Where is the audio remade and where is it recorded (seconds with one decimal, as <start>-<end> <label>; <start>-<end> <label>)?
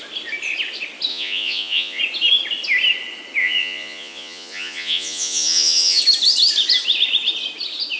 0.0-1.1 recorded; 1.1-2.0 remade; 2.0-3.4 recorded; 3.4-6.0 remade; 6.0-8.0 recorded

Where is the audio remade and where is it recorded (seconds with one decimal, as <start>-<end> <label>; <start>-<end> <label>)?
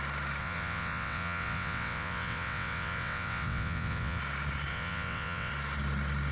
0.0-0.4 recorded; 0.4-4.2 remade; 4.2-4.7 recorded; 4.7-5.5 remade; 5.5-6.3 recorded